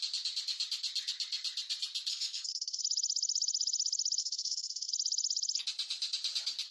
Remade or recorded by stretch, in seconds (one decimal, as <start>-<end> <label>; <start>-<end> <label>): 0.0-2.1 recorded; 2.1-2.8 remade; 2.8-4.2 recorded; 4.2-4.9 remade; 4.9-6.7 recorded